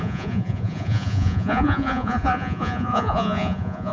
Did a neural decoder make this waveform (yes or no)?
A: yes